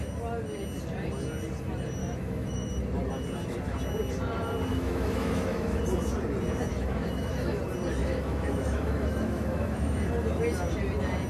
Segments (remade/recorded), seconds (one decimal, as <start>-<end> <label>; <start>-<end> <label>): 0.0-2.0 recorded; 2.0-2.7 remade; 2.7-4.7 recorded; 4.7-5.8 remade; 5.8-6.7 recorded; 6.7-7.6 remade; 7.6-8.0 recorded; 8.0-10.0 remade; 10.0-11.3 recorded